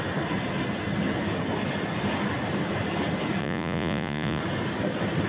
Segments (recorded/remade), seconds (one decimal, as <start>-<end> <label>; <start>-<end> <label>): 0.0-3.4 recorded; 3.4-4.4 remade; 4.4-5.3 recorded